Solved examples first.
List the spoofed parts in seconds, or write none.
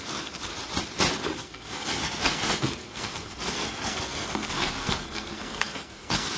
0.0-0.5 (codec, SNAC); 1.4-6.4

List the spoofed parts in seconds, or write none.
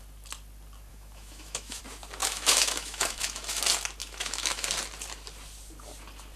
0.9-1.8 (autoencoder, DAC-VAE); 2.2-3.6; 4.0-4.7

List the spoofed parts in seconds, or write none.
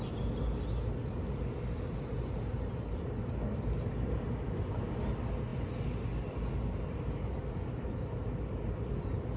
none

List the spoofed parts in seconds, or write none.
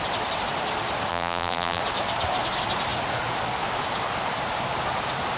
1.1-1.8 (vocoder, BigVGAN v2)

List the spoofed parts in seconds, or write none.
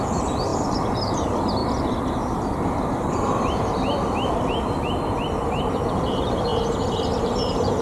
0.0-1.6 (vocoder, BigVGAN v2); 5.5-7.8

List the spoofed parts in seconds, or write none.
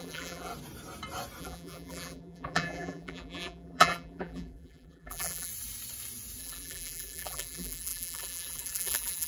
0.0-0.5 (vocoder, BigVGAN v2); 1.4-5.5; 6.4-9.3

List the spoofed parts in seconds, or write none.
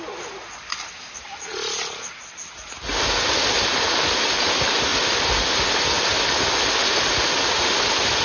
none